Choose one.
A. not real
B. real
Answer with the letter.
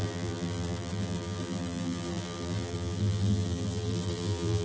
A